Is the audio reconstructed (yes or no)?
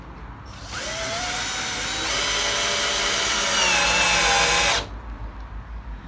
no